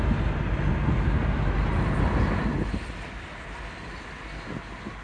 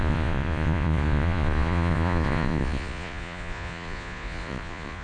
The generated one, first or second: second